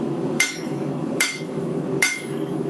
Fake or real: fake